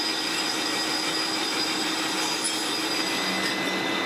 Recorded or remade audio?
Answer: recorded